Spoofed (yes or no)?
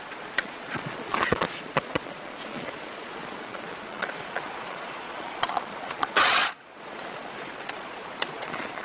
yes